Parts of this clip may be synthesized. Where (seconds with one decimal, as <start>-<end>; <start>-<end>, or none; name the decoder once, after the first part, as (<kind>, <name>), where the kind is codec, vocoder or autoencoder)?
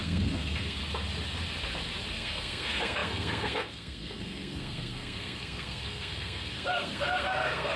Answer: 0.0-0.8 (codec, SNAC); 2.1-7.8